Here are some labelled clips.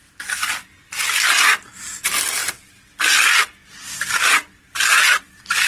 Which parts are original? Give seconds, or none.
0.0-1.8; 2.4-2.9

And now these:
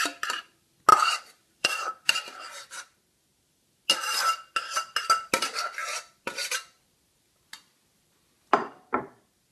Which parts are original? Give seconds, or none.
0.0-0.9; 3.8-8.6

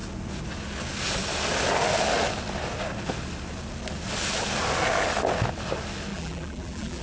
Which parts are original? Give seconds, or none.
0.0-6.1

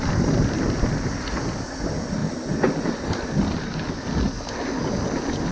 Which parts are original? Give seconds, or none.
0.0-5.5

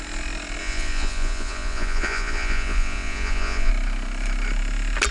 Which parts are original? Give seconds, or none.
0.0-0.6; 3.7-5.1

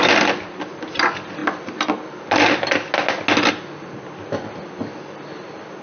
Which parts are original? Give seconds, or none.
0.0-5.8

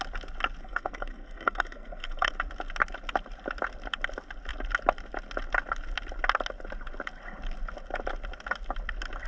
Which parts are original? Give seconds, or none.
0.0-0.6; 2.3-9.3

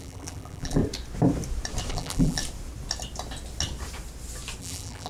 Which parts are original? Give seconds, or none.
0.8-1.9; 2.4-4.6